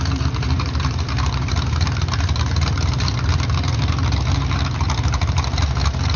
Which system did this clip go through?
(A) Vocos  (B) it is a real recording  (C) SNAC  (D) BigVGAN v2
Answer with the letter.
D